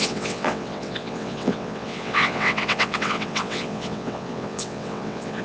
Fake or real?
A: fake